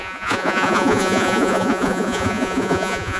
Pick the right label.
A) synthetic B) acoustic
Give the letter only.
A